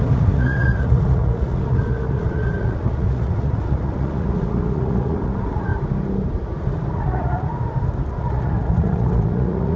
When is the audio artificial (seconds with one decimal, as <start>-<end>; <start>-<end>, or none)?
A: 0.0-5.7; 6.9-7.5; 8.1-9.8